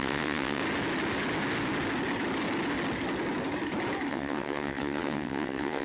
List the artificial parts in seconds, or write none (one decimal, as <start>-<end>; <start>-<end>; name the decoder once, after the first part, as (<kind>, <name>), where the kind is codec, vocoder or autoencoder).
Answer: 0.0-0.6 (vocoder, WaveNeXt); 4.1-5.8